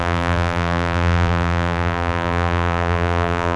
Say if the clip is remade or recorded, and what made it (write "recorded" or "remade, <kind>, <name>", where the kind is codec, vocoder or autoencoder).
remade, vocoder, BigVGAN v2